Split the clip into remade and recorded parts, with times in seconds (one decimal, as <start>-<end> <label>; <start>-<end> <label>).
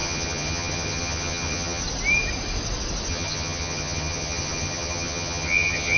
0.0-1.8 remade; 1.8-3.1 recorded; 3.1-6.0 remade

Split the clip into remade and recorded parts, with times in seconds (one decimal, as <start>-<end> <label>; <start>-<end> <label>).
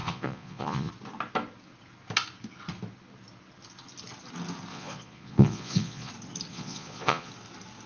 0.0-0.9 remade; 0.9-4.7 recorded; 4.7-6.1 remade; 6.1-6.5 recorded; 6.5-7.3 remade; 7.3-7.9 recorded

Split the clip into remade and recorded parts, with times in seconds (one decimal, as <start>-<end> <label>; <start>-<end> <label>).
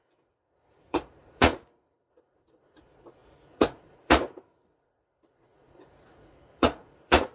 0.0-7.3 remade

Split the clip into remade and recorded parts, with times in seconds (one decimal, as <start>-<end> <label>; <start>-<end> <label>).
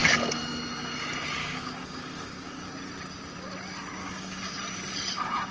0.0-1.4 recorded; 1.4-2.7 remade; 2.7-4.0 recorded; 4.0-4.6 remade; 4.6-5.5 recorded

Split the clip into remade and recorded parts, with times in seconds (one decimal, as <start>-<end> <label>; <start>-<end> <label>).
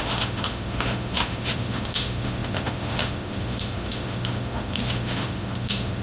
0.0-6.0 remade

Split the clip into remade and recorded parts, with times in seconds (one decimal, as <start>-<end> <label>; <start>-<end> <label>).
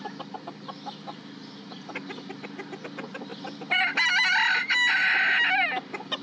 0.0-6.2 recorded